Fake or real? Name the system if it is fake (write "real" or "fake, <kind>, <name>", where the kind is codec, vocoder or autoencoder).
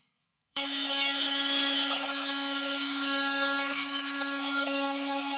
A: fake, autoencoder, DAC-VAE